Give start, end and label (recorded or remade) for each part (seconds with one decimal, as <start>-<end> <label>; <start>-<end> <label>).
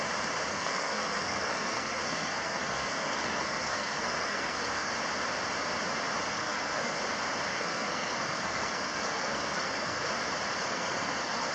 0.0-0.5 recorded; 0.5-4.9 remade; 4.9-6.3 recorded; 6.3-7.0 remade; 7.0-7.5 recorded; 7.5-10.1 remade; 10.1-10.6 recorded; 10.6-11.5 remade